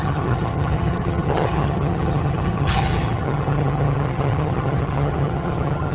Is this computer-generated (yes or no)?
yes